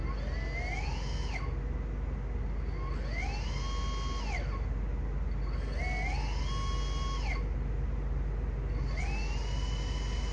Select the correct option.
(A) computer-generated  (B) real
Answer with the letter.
B